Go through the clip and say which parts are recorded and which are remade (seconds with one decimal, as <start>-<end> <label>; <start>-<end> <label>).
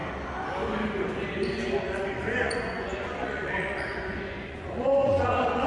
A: 0.0-1.7 recorded; 1.7-5.7 remade